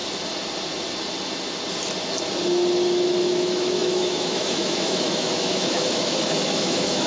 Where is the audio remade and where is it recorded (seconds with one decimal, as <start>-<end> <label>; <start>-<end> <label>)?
0.0-3.2 recorded; 3.2-7.1 remade